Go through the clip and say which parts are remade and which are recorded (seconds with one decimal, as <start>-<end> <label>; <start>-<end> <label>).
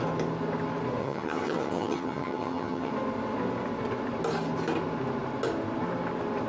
0.0-1.0 recorded; 1.0-2.9 remade; 2.9-6.5 recorded